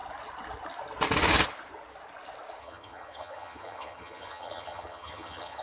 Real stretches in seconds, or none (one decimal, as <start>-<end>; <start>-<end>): 0.0-2.6